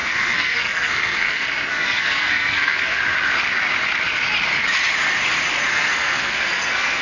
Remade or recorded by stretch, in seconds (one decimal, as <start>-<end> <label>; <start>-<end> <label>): 0.0-3.0 remade; 3.0-5.7 recorded; 5.7-7.0 remade